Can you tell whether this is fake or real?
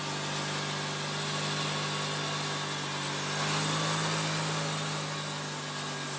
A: real